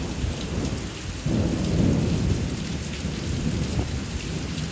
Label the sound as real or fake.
real